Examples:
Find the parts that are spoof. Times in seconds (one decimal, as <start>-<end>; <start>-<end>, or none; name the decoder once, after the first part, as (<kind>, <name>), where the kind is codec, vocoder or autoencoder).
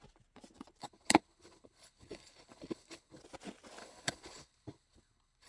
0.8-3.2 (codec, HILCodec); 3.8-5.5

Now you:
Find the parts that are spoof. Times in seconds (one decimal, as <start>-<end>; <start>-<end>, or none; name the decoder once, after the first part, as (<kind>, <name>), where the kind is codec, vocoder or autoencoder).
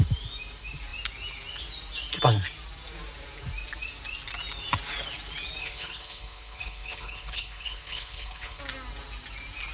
5.6-8.6 (codec, HILCodec)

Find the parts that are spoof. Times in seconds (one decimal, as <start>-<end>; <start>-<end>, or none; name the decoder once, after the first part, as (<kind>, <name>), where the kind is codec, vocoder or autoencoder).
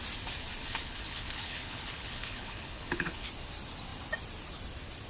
0.6-3.3 (codec, HILCodec)